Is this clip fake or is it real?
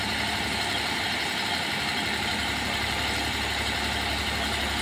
real